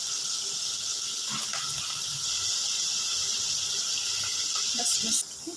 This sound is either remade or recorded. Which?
recorded